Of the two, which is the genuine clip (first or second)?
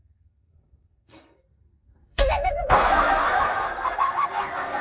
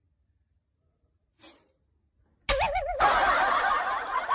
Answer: second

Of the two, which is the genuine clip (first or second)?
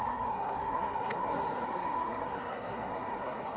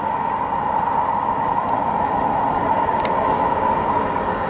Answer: second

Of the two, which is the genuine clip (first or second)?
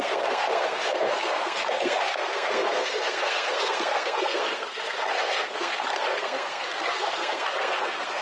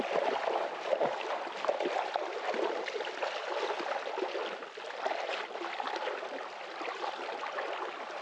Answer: second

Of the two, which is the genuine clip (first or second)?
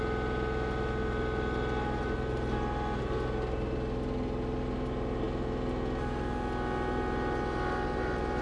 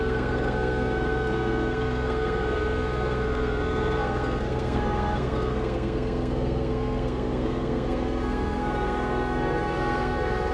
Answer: first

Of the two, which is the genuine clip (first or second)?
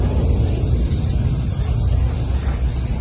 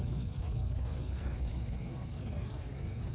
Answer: first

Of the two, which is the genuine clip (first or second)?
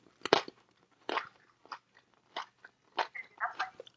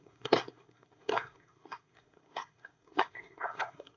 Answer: first